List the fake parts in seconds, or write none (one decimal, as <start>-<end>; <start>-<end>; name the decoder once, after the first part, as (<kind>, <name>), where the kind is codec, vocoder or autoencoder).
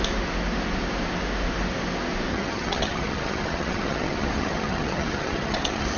2.3-6.0 (vocoder, HiFi-GAN)